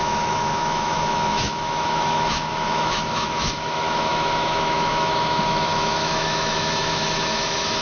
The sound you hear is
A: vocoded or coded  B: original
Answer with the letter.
A